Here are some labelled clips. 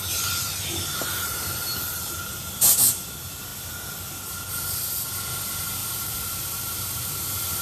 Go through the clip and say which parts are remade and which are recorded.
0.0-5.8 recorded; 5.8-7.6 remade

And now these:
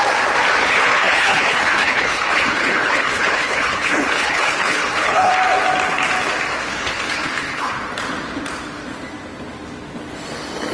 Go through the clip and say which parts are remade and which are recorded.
0.0-0.6 recorded; 0.6-5.3 remade; 5.3-6.6 recorded; 6.6-7.7 remade; 7.7-10.7 recorded

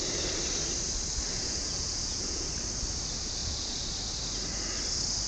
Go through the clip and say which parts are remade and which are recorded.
0.0-1.3 recorded; 1.3-2.5 remade; 2.5-3.4 recorded; 3.4-3.9 remade; 3.9-5.3 recorded